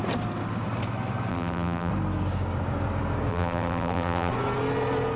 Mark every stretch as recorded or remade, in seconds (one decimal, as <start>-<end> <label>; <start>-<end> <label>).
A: 0.0-1.3 recorded; 1.3-1.9 remade; 1.9-3.3 recorded; 3.3-4.3 remade; 4.3-5.2 recorded

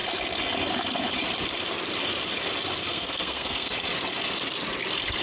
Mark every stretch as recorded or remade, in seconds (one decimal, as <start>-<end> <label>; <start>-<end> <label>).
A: 0.0-2.8 recorded; 2.8-3.7 remade; 3.7-5.2 recorded

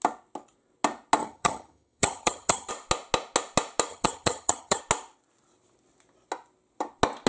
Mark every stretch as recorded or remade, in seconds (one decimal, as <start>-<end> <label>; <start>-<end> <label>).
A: 0.0-1.2 recorded; 1.2-2.7 remade; 2.7-3.9 recorded; 3.9-4.8 remade; 4.8-7.3 recorded

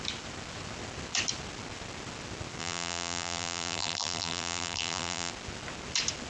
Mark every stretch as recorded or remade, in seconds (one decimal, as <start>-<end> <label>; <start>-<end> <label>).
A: 0.0-2.6 recorded; 2.6-5.3 remade; 5.3-6.3 recorded

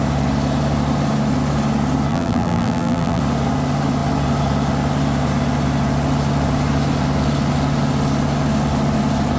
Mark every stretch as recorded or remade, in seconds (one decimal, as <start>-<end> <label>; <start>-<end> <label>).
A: 0.0-2.1 recorded; 2.1-3.2 remade; 3.2-9.4 recorded

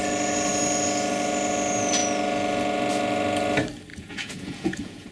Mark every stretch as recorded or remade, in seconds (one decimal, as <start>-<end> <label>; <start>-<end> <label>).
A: 0.0-3.9 recorded; 3.9-5.1 remade

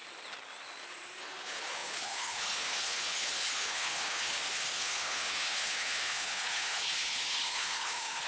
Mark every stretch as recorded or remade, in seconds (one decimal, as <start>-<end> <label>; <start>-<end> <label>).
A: 0.0-1.2 recorded; 1.2-8.3 remade

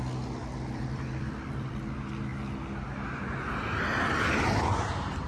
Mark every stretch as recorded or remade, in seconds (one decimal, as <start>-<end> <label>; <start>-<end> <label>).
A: 0.0-0.4 recorded; 0.4-1.7 remade; 1.7-5.3 recorded